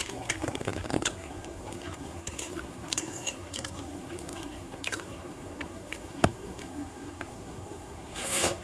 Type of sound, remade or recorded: remade